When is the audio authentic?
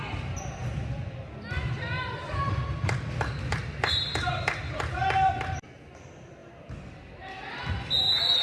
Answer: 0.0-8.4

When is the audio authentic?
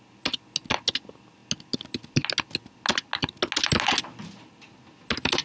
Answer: 0.0-5.4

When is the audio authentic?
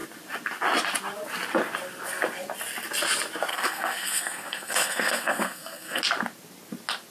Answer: 0.0-3.5; 6.0-7.1